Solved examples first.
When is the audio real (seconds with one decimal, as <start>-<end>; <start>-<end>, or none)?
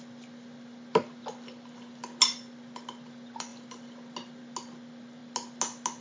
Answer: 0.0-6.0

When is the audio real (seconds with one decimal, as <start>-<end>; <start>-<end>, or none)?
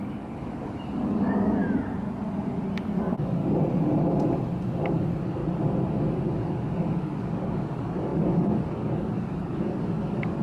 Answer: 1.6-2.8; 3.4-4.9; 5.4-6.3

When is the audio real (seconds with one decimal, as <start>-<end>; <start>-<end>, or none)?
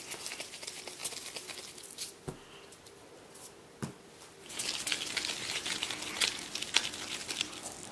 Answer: 0.0-5.4; 5.9-7.9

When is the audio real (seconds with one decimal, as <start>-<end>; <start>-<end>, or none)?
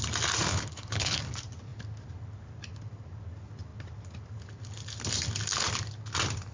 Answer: 0.0-0.5; 1.2-6.5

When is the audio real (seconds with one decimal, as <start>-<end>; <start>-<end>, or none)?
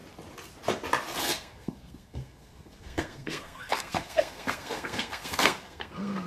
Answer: 0.0-1.2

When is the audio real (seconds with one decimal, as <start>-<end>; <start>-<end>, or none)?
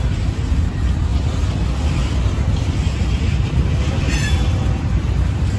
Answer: 0.0-5.6